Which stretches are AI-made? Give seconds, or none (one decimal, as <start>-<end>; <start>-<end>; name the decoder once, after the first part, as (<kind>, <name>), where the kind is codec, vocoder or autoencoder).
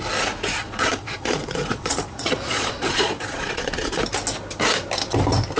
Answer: 0.6-4.0 (vocoder, Vocos)